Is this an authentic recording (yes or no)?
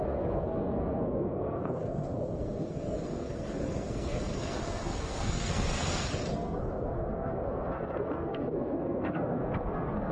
no